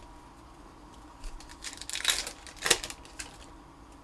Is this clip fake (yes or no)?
no